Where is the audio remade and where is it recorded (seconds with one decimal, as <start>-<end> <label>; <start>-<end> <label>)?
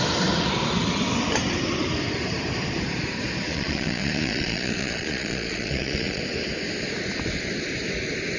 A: 0.0-3.5 recorded; 3.5-6.2 remade; 6.2-8.4 recorded